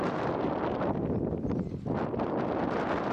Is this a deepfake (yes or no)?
no